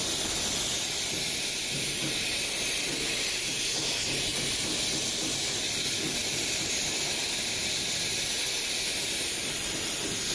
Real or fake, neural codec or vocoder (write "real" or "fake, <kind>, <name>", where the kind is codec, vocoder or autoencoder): real